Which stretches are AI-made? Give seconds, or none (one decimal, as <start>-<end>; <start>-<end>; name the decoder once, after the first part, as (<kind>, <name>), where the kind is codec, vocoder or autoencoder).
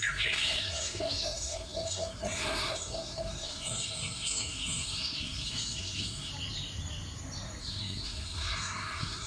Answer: 0.0-6.3 (codec, SNAC); 7.6-9.3